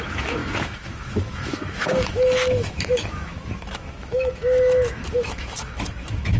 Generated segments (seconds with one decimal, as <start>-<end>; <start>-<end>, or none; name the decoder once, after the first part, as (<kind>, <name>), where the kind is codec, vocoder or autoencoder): 0.0-6.4 (autoencoder, DAC-VAE)